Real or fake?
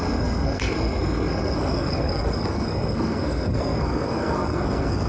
fake